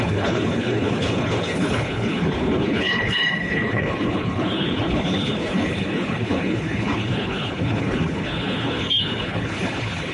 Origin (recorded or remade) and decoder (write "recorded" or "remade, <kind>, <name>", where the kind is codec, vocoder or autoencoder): remade, codec, HILCodec